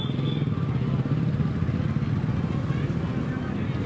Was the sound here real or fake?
real